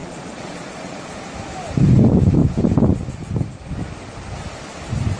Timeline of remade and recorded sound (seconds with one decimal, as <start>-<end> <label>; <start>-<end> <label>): 0.0-1.1 remade; 1.1-5.2 recorded